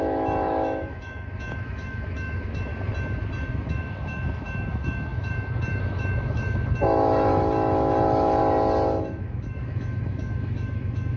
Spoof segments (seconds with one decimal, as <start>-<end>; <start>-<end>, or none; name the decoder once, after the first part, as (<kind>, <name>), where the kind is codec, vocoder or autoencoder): 0.0-2.7 (autoencoder, DAC-VAE); 3.5-8.4; 9.0-11.2